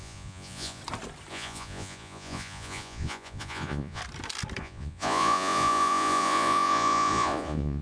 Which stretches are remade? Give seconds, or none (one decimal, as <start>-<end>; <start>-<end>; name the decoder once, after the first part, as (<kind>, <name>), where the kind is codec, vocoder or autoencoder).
0.0-0.8 (vocoder, Vocos); 1.3-4.0; 4.6-7.8